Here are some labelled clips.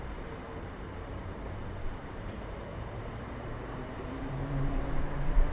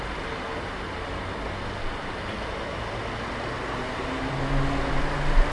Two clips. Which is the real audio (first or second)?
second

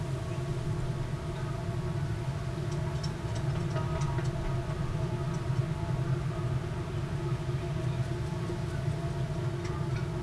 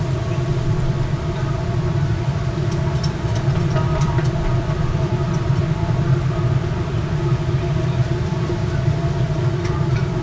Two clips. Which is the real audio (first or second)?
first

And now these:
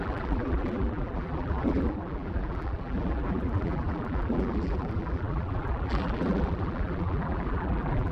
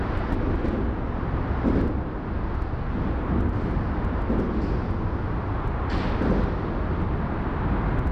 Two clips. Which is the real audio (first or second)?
second